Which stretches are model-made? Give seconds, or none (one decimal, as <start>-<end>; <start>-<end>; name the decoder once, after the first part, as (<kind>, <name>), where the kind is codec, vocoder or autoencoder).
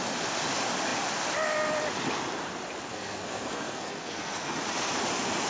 2.9-4.5 (codec, SNAC)